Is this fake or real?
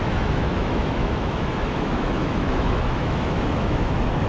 fake